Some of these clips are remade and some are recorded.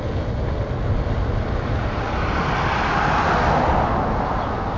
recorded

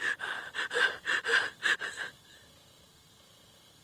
recorded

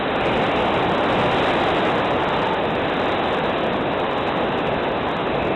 recorded